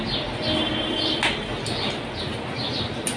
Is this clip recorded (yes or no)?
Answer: yes